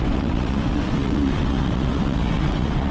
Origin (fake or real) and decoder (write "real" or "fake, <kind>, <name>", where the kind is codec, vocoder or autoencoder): fake, vocoder, WaveNeXt